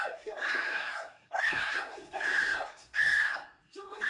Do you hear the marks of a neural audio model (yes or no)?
yes